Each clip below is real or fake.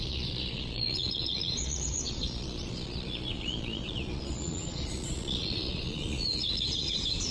fake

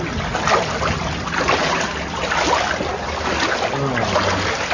real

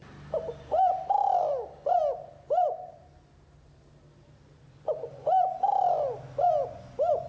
real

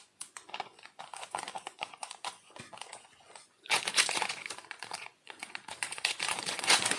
fake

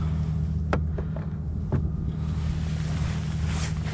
real